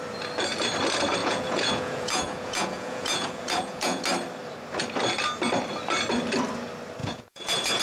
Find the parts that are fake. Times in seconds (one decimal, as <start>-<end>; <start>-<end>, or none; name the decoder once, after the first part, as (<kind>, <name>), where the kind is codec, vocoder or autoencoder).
1.2-4.0 (vocoder, Vocos); 7.0-7.8